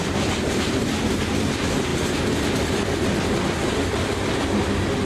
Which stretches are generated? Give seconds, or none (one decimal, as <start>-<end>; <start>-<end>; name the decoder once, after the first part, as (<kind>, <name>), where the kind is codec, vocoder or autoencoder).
none